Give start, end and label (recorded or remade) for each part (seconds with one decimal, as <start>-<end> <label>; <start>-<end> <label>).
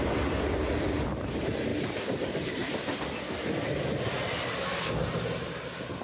0.0-6.0 recorded